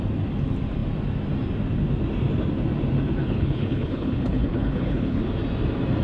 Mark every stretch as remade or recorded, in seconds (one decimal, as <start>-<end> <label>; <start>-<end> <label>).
0.0-3.2 recorded; 3.2-5.2 remade; 5.2-6.0 recorded